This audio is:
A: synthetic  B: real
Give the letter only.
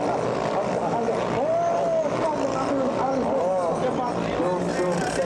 B